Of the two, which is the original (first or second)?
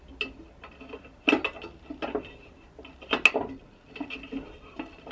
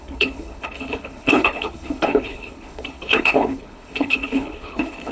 first